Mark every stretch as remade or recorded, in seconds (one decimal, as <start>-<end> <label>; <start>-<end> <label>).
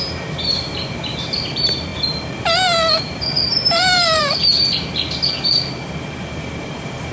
0.0-1.9 remade; 1.9-2.4 recorded; 2.4-4.2 remade; 4.2-7.1 recorded